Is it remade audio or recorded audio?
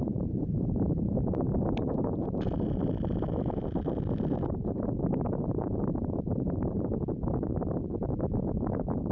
remade